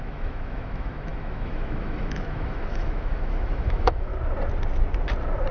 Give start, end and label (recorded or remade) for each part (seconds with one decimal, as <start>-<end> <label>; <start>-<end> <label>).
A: 0.0-4.1 remade; 4.1-5.5 recorded